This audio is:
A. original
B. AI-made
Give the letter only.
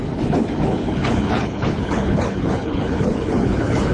B